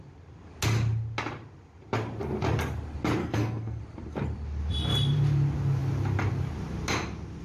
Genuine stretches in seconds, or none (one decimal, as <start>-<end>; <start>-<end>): 0.0-3.2; 3.8-7.4